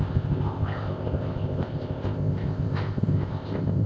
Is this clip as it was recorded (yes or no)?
no